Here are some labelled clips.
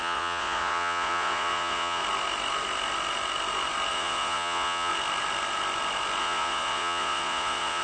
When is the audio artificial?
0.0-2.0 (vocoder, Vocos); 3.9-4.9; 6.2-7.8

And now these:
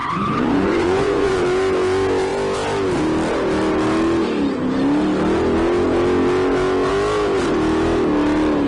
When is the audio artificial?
0.0-1.4 (vocoder, Vocos)

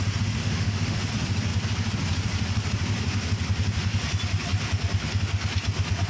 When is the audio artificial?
0.4-1.1 (autoencoder, DAC-VAE)